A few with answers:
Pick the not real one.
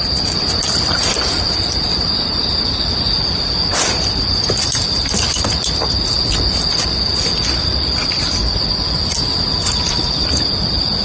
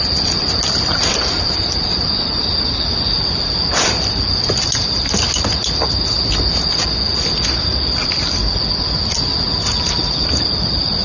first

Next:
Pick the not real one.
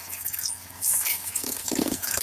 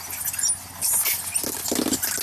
first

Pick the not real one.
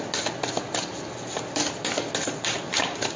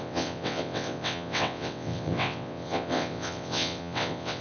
second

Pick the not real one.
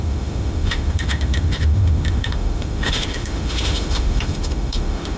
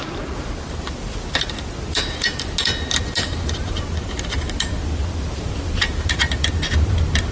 first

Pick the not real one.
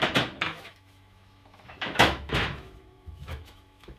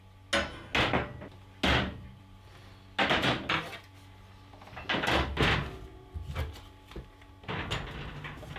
first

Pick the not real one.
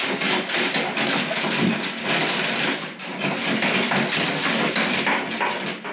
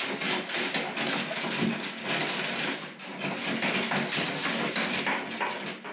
first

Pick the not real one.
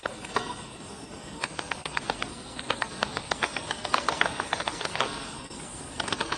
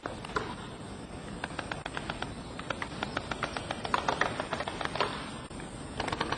first